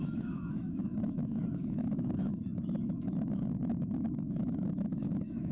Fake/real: fake